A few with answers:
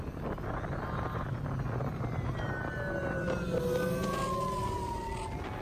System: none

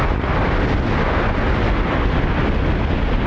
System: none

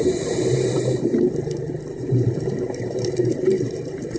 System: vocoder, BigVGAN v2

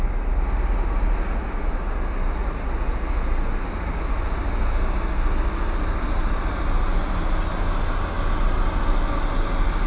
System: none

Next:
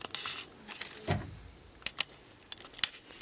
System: none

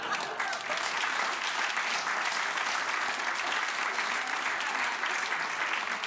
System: none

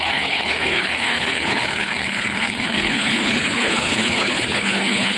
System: codec, HILCodec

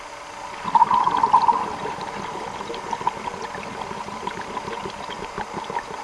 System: none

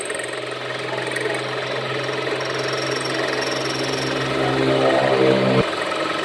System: none